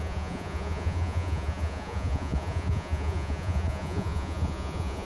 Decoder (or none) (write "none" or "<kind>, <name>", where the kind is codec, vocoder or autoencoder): vocoder, Vocos